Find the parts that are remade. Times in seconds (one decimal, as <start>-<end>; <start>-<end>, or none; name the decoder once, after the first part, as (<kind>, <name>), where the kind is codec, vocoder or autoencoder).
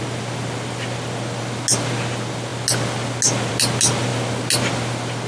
none